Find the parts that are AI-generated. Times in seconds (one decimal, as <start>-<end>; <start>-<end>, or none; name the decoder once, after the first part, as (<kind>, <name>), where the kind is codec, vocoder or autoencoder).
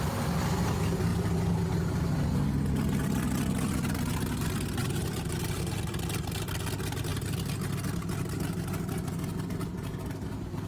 4.8-5.6 (vocoder, BigVGAN v2)